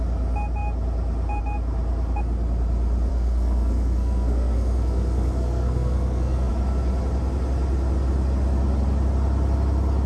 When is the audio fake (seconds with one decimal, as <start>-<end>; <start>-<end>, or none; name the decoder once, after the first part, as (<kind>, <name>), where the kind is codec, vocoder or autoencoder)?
3.1-6.5 (codec, SNAC)